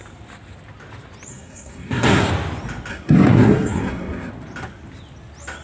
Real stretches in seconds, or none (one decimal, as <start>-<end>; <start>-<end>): 0.0-1.3; 2.3-2.9; 4.3-5.6

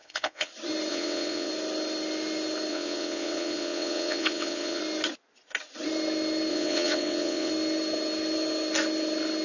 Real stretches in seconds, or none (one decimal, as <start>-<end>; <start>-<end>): 0.5-0.9; 1.5-2.7; 4.8-6.5; 7.5-9.4

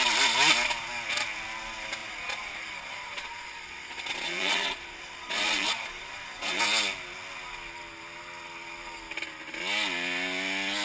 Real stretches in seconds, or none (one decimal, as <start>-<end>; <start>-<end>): 0.0-2.0; 6.6-10.8

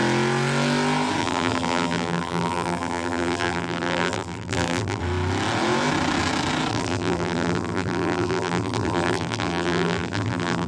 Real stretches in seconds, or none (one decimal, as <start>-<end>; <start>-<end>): 0.0-1.2; 5.0-6.7

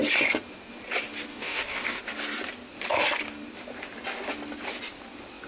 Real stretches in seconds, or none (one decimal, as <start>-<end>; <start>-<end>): 0.0-1.3; 2.0-5.5

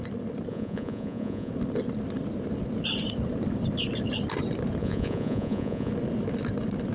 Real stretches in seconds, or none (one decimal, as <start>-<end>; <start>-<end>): 0.0-0.5; 1.5-4.8; 5.9-6.9